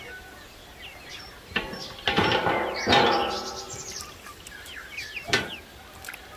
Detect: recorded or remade recorded